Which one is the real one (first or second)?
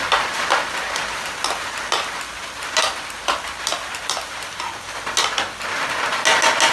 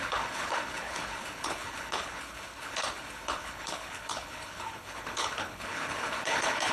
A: first